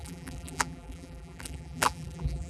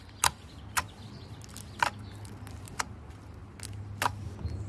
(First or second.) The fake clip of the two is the first